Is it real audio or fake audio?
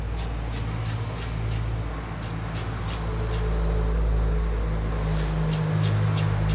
real